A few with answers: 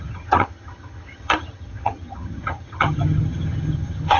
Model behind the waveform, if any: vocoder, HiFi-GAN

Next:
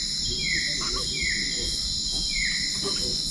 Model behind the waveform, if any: none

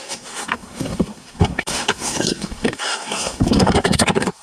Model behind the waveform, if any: codec, SNAC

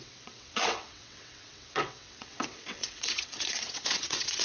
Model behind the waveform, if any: vocoder, WaveNeXt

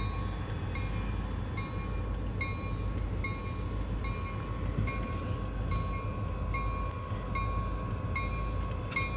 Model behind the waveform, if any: none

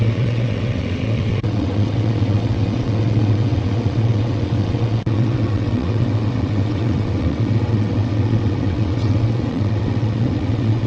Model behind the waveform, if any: vocoder, WaveNeXt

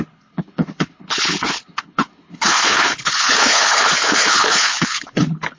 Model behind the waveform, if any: codec, HILCodec